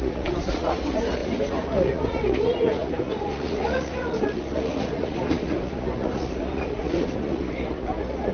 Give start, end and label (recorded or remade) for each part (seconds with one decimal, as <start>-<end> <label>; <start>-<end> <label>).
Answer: 0.0-8.3 remade